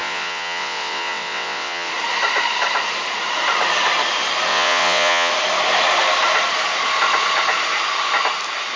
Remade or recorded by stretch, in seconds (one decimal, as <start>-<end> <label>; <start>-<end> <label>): 0.0-1.9 remade; 1.9-4.5 recorded; 4.5-5.3 remade; 5.3-8.8 recorded